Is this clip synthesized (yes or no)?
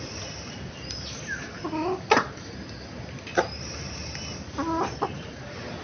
no